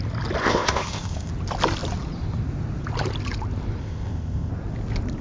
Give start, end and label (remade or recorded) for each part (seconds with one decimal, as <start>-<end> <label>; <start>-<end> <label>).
0.0-0.4 recorded; 0.4-1.3 remade; 1.3-3.8 recorded; 3.8-4.5 remade; 4.5-5.2 recorded

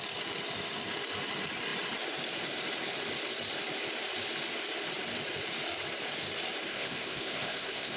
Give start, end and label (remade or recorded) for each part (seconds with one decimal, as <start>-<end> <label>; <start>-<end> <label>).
0.0-6.7 recorded; 6.7-8.0 remade